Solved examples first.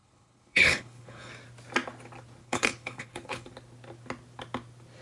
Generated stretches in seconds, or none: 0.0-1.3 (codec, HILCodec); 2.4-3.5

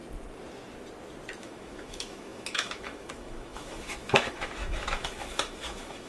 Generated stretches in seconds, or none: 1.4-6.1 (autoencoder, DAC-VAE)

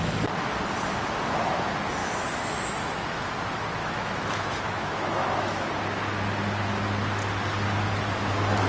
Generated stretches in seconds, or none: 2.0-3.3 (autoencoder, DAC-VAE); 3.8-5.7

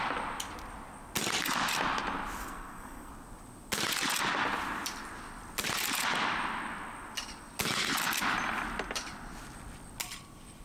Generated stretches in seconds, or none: 2.4-3.1 (codec, SNAC)

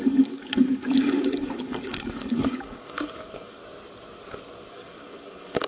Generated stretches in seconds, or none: 0.0-3.6 (codec, DAC); 4.7-5.7